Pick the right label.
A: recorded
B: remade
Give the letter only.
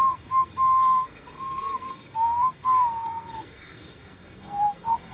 B